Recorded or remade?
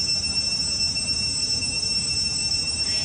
recorded